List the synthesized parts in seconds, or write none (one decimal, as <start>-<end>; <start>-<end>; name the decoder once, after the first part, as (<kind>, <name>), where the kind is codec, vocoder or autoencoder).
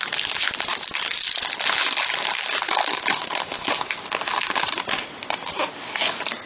none